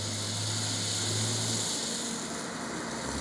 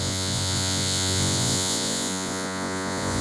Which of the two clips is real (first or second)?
first